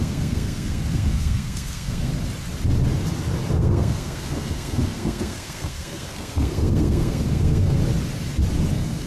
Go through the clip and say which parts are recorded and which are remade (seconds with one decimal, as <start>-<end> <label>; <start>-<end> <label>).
0.0-2.1 remade; 2.1-3.5 recorded; 3.5-7.8 remade; 7.8-8.7 recorded; 8.7-9.1 remade